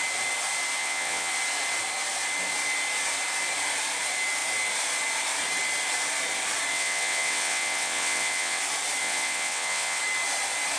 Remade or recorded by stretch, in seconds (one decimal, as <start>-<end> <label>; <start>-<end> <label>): 0.0-0.8 recorded; 0.8-1.3 remade; 1.3-6.7 recorded; 6.7-8.6 remade; 8.6-9.0 recorded; 9.0-10.0 remade; 10.0-10.8 recorded